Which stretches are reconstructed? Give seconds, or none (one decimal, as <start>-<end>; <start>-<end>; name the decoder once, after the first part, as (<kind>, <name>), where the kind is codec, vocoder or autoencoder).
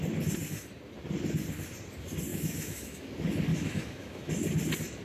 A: 2.3-3.1 (autoencoder, DAC-VAE); 3.5-4.3